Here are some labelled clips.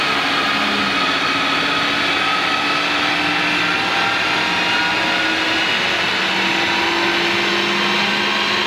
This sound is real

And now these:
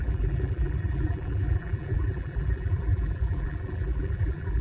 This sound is fake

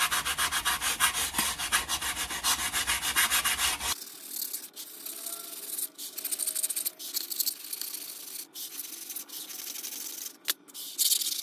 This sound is real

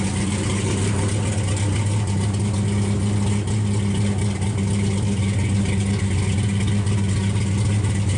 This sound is real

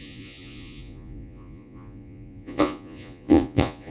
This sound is fake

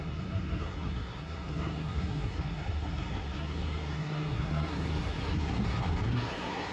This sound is fake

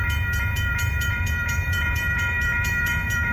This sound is fake